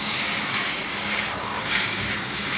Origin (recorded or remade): remade